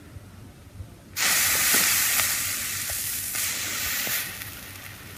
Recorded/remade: remade